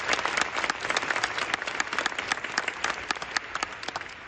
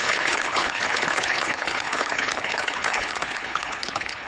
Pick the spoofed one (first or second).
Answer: second